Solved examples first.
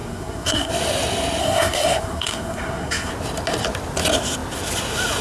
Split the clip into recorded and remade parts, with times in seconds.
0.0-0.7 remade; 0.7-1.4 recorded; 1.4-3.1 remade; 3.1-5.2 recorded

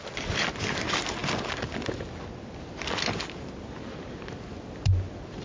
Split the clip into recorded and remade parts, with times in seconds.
0.0-5.4 recorded